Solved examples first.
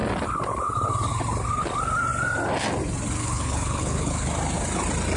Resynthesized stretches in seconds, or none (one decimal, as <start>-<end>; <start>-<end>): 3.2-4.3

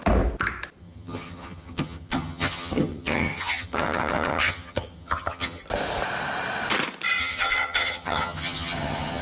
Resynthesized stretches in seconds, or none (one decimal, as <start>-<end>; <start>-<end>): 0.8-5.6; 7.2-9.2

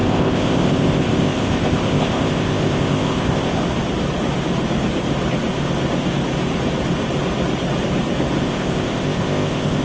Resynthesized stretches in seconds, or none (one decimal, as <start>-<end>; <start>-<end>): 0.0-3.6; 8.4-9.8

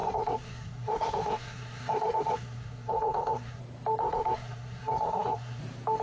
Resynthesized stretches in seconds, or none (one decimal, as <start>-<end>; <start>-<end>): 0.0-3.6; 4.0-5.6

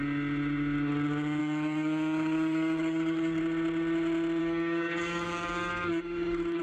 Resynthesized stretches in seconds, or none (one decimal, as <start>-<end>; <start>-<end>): 1.4-3.4; 4.4-6.6